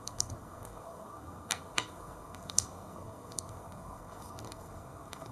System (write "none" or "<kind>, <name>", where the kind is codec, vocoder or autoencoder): codec, SNAC